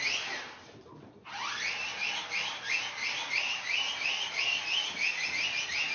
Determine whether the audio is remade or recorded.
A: recorded